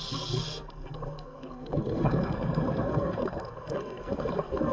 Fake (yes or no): yes